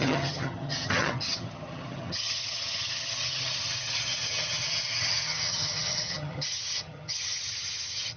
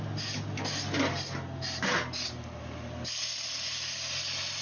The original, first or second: second